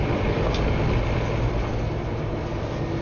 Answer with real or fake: real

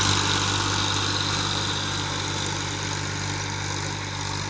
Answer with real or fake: real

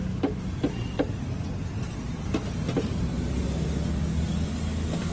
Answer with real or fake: real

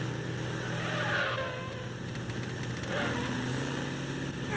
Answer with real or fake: real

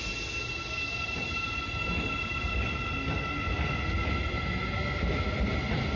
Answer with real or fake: real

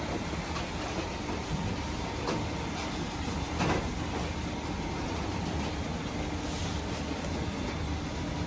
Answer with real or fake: real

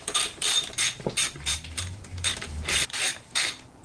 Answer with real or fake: fake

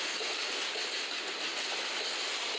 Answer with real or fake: real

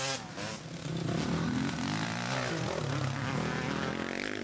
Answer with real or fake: real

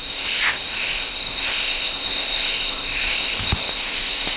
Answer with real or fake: fake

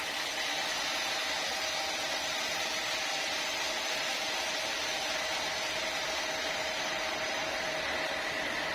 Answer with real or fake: real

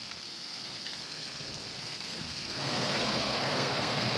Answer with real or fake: fake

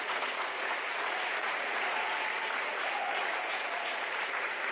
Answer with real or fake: fake